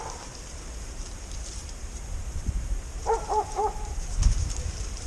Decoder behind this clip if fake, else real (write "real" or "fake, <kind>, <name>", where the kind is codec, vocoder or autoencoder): fake, vocoder, BigVGAN v2